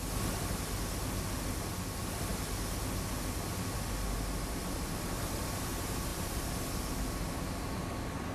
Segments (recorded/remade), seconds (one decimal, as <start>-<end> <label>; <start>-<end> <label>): 0.0-6.1 recorded; 6.1-6.6 remade; 6.6-8.3 recorded